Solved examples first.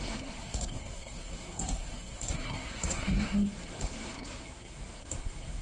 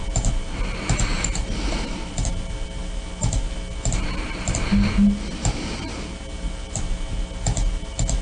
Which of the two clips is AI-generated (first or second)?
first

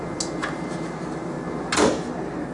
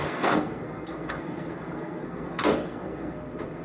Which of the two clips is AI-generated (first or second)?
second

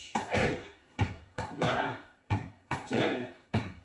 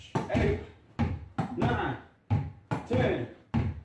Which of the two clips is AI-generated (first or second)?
first